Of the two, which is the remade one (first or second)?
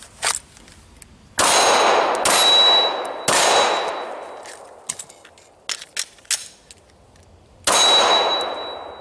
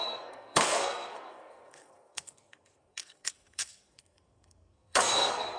second